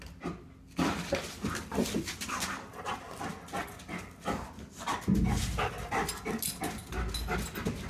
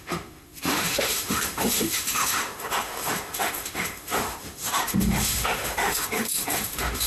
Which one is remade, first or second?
second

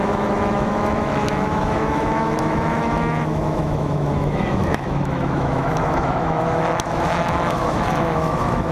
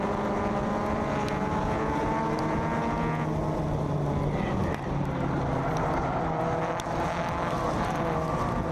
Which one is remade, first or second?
first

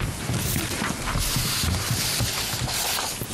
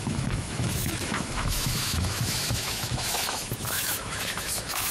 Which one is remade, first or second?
second